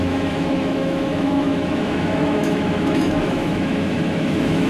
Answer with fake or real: fake